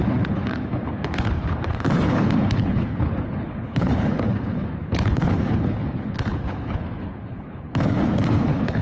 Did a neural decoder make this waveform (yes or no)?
yes